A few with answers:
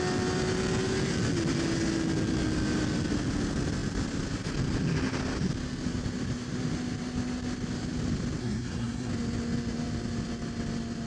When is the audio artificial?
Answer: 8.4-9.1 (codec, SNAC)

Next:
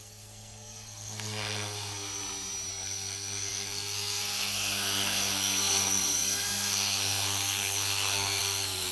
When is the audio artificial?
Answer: 0.0-2.2 (codec, SNAC); 2.7-8.9

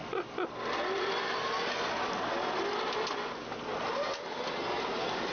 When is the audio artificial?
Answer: none

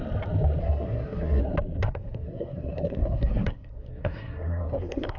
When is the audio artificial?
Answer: 0.6-1.4 (codec, SNAC); 1.8-5.2

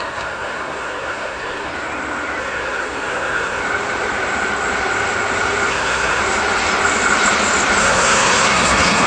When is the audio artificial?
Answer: 0.0-1.7 (codec, SNAC); 2.4-3.6; 5.7-6.2; 7.8-9.1

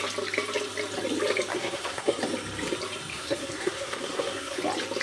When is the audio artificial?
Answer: 1.5-2.2 (codec, SNAC); 3.1-4.6